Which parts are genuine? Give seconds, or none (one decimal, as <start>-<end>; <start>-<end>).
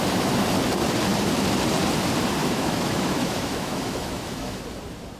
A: 0.0-2.4; 4.6-5.2